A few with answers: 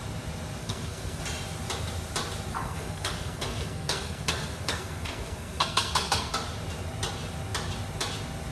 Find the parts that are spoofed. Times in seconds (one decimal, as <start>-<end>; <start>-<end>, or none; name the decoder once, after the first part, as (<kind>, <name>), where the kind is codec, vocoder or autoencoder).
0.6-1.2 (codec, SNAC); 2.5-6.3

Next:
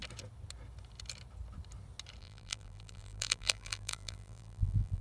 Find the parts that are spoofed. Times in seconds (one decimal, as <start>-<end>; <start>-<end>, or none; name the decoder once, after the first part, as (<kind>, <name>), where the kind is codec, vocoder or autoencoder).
2.2-5.0 (vocoder, BigVGAN v2)

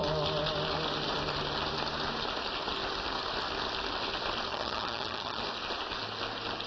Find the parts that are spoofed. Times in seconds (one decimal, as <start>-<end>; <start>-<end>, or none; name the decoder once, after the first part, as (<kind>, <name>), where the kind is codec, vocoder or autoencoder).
4.5-5.4 (vocoder, HiFi-GAN)

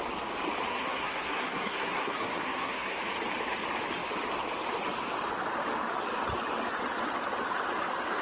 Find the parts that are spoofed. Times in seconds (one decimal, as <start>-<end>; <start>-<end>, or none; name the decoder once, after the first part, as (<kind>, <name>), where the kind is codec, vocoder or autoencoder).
0.7-3.0 (codec, SNAC)